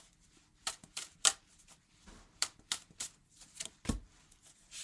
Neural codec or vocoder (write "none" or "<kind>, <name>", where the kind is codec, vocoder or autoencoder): none